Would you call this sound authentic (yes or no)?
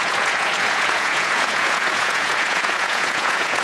no